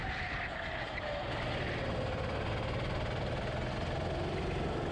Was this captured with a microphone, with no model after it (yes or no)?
yes